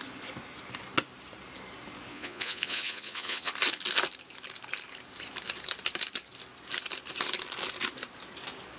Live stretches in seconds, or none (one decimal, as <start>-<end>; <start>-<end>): 0.0-2.1; 3.5-8.8